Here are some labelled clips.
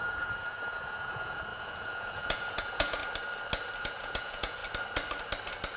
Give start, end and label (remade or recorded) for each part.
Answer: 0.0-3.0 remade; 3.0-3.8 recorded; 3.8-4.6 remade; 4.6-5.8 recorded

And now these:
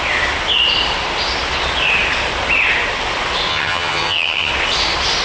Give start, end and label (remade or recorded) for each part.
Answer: 0.0-3.5 recorded; 3.5-4.5 remade; 4.5-5.2 recorded

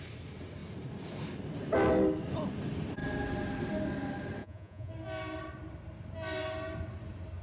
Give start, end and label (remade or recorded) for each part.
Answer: 0.0-4.4 recorded; 4.4-4.9 remade; 4.9-7.4 recorded

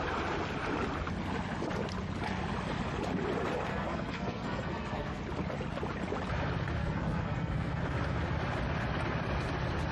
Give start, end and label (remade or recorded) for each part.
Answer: 0.0-3.7 recorded; 3.7-5.2 remade; 5.2-6.8 recorded; 6.8-7.8 remade; 7.8-9.9 recorded

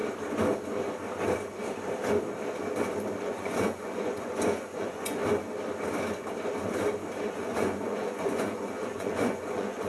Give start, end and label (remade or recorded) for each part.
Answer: 0.0-3.2 recorded; 3.2-5.2 remade; 5.2-7.3 recorded; 7.3-9.9 remade